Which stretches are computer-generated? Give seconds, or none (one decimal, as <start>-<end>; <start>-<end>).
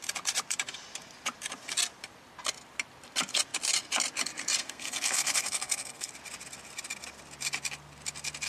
4.6-6.1